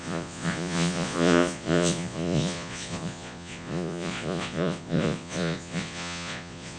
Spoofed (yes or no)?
yes